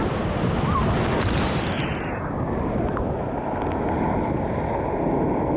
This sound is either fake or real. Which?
real